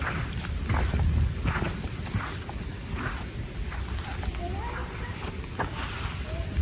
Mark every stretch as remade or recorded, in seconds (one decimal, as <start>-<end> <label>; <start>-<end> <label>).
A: 0.0-6.6 recorded